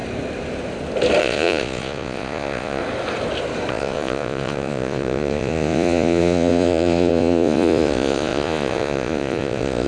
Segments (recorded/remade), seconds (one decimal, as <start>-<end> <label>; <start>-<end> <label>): 0.0-1.2 recorded; 1.2-2.8 remade; 2.8-3.7 recorded; 3.7-9.9 remade